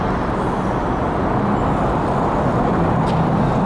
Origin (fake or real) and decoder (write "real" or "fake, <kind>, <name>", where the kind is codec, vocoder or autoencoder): real